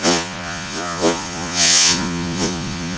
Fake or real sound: fake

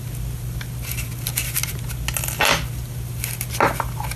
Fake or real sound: real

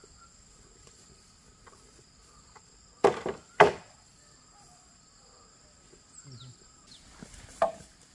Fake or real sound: real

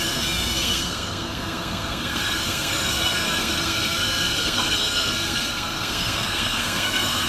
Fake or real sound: fake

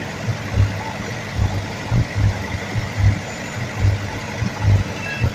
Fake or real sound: real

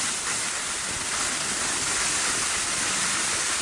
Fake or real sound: real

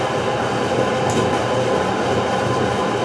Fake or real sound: real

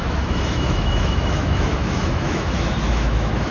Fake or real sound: fake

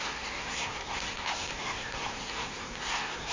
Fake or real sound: fake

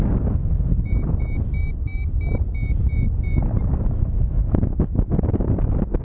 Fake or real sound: real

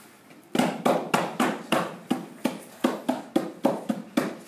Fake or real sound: real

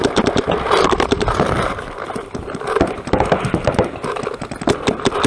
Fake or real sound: fake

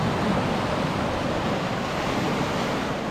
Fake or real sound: real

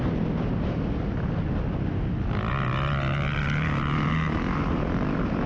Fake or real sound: real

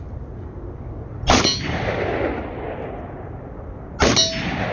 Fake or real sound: real